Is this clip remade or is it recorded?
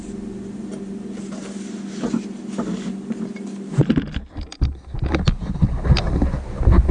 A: recorded